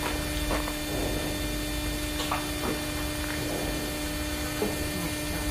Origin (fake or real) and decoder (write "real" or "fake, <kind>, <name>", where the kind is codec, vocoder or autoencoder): real